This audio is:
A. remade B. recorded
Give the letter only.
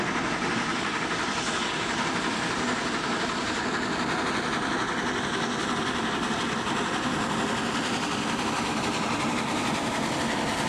B